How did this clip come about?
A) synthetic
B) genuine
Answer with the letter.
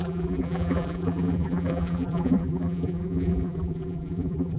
A